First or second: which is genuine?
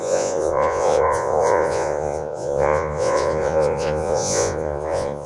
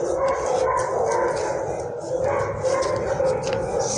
second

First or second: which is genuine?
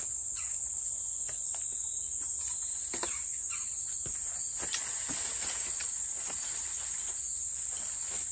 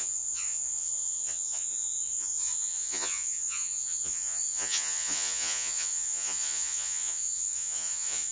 first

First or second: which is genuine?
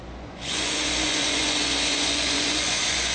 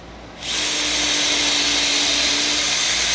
second